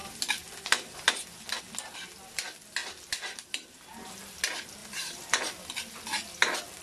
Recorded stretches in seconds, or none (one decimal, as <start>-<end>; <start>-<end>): 1.6-2.8; 3.8-4.8; 5.5-6.8